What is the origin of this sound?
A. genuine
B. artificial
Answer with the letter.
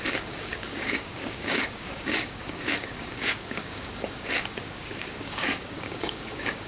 B